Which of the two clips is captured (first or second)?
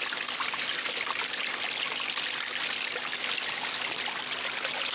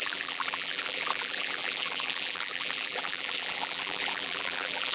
first